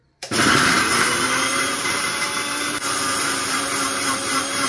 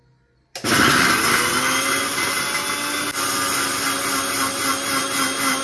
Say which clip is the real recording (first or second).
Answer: second